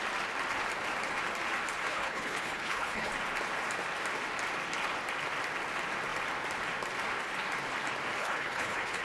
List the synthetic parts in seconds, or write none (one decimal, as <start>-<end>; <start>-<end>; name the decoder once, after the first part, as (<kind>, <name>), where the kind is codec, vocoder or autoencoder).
1.9-3.1 (codec, HILCodec); 8.2-9.0